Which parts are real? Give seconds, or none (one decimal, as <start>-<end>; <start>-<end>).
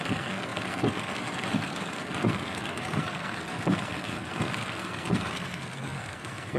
none